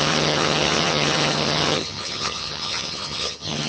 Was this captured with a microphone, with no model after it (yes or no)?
no